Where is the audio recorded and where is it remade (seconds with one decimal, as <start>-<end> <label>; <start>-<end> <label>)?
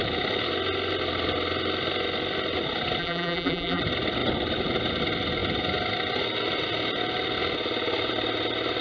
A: 0.0-3.0 recorded; 3.0-3.8 remade; 3.8-8.8 recorded